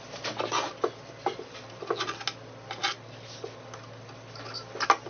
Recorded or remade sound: recorded